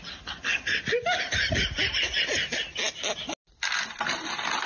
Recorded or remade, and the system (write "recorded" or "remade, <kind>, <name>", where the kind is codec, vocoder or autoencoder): recorded